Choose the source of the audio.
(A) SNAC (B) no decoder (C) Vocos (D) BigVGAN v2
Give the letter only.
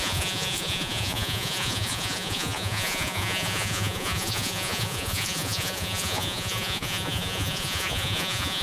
C